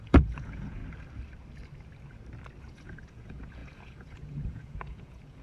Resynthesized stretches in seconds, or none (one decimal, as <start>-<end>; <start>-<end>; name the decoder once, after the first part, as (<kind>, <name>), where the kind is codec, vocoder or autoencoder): 0.0-0.8 (vocoder, Vocos); 2.6-5.4